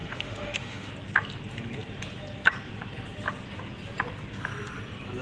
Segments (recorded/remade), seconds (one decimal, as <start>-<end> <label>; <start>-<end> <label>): 0.0-0.9 remade; 0.9-5.2 recorded

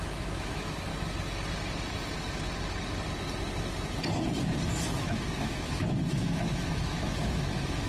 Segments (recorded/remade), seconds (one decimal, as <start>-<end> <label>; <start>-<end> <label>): 0.0-0.9 remade; 0.9-5.0 recorded; 5.0-7.9 remade

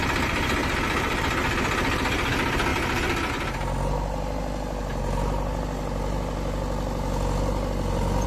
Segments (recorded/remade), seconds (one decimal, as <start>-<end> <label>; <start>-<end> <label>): 0.0-8.3 recorded

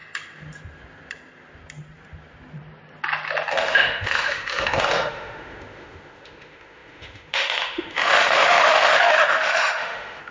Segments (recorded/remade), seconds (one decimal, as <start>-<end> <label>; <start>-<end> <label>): 0.0-3.5 recorded; 3.5-10.3 remade

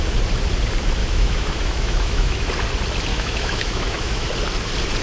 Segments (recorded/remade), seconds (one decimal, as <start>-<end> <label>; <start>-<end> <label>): 0.0-1.0 recorded; 1.0-2.5 remade; 2.5-3.1 recorded; 3.1-4.3 remade; 4.3-5.0 recorded